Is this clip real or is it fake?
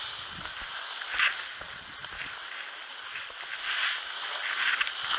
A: real